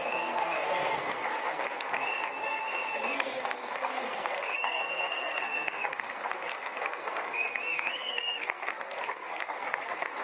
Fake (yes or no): yes